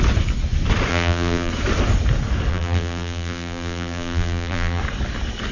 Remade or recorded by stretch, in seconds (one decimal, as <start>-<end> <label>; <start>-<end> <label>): 0.0-0.9 recorded; 0.9-1.5 remade; 1.5-2.5 recorded; 2.5-4.8 remade; 4.8-5.5 recorded